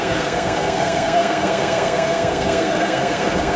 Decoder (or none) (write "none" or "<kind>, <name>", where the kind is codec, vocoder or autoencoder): codec, SNAC